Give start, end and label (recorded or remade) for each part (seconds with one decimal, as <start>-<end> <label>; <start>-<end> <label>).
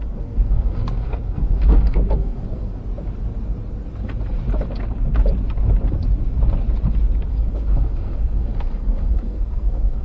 0.0-2.8 remade; 2.8-7.3 recorded; 7.3-10.0 remade